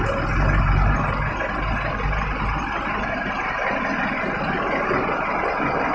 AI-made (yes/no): no